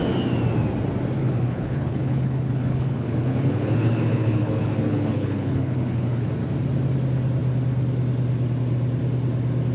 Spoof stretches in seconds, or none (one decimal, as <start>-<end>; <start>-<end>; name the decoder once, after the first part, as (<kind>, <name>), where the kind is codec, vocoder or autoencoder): 1.2-6.3 (codec, HILCodec)

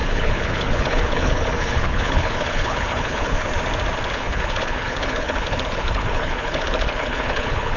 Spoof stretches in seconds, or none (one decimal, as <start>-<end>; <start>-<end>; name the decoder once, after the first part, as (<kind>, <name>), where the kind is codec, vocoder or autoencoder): 0.0-3.5 (codec, HILCodec); 4.1-7.8

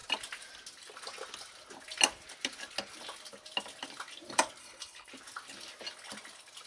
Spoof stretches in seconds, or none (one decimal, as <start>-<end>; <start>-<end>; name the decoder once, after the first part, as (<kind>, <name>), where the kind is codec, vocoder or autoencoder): 4.6-5.1 (codec, HILCodec)

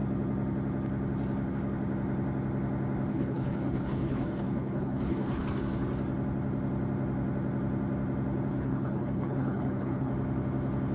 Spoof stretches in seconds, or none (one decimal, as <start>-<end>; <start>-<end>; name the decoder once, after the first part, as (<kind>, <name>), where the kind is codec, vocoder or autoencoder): 3.1-5.4 (codec, HILCodec); 8.5-10.1